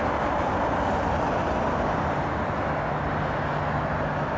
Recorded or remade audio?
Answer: recorded